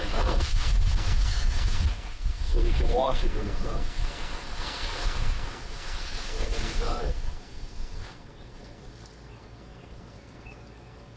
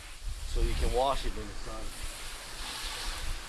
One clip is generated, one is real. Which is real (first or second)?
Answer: second